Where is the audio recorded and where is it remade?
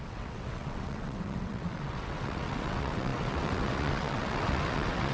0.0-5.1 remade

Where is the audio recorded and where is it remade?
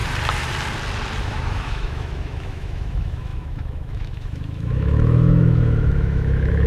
0.0-1.2 recorded; 1.2-6.7 remade